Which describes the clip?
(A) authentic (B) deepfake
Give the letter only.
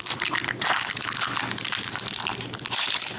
A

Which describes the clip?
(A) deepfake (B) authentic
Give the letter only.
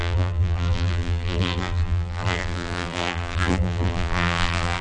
A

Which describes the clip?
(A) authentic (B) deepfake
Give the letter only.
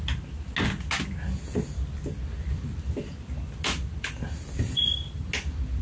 A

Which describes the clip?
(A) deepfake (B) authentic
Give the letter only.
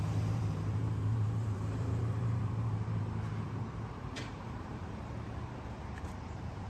A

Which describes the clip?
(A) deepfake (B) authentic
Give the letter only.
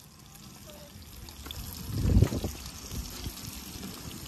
B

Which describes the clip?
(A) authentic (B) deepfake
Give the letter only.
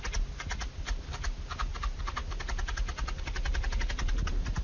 A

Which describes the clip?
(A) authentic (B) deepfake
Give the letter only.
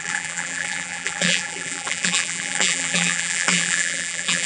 B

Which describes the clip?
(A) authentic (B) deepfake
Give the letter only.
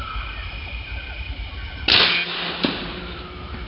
A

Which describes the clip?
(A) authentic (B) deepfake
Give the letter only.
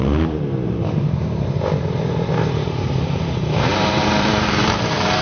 B